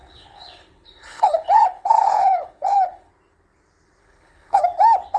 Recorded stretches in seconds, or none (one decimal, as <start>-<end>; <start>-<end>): 3.1-4.0; 4.6-5.2